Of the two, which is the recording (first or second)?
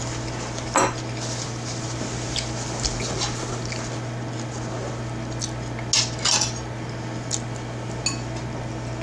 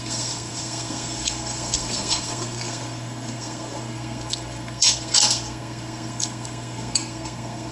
first